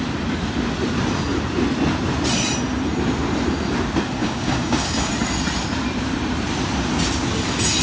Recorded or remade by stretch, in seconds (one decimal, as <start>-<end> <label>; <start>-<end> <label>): 0.0-4.2 recorded; 4.2-5.1 remade; 5.1-7.8 recorded